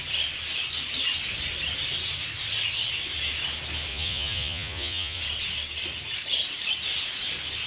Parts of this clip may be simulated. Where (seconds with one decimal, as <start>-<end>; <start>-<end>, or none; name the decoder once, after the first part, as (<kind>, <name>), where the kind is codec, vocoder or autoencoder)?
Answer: 3.9-5.2 (vocoder, Vocos)